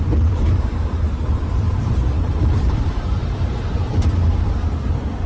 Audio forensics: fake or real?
fake